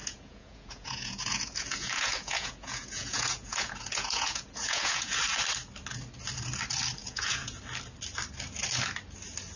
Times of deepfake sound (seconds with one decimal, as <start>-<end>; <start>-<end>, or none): 0.0-5.2; 7.0-7.6